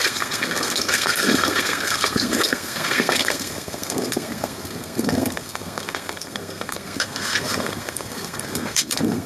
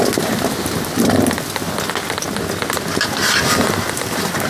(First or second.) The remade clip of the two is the first